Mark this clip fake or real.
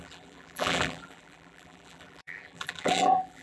fake